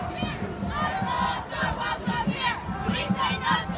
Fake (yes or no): no